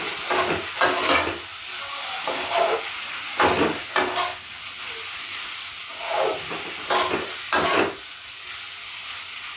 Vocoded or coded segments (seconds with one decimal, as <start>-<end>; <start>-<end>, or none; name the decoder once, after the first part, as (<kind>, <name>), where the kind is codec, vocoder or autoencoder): none